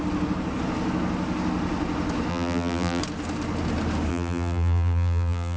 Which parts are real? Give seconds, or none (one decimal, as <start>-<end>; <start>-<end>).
0.0-2.3; 3.0-4.1